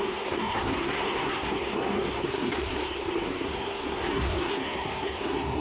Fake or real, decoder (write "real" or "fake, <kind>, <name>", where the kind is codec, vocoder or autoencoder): fake, codec, SNAC